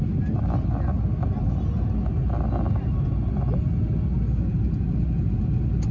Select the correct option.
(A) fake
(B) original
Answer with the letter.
B